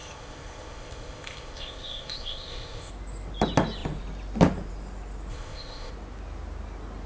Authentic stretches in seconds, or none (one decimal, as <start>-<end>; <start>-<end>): 2.9-5.3; 5.9-7.1